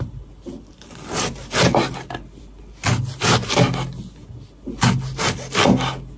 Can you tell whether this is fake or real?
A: real